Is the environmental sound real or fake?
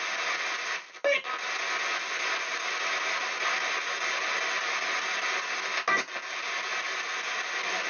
real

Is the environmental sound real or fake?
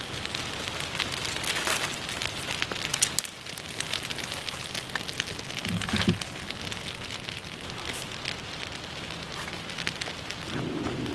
real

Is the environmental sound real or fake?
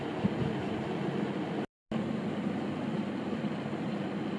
real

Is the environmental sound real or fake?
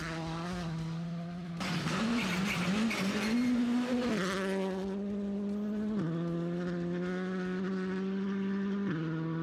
real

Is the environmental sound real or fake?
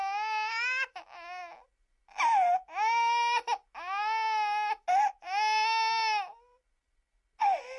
real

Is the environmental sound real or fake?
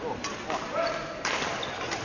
real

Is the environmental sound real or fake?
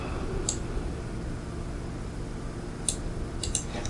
real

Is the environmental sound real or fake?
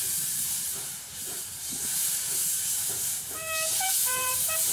fake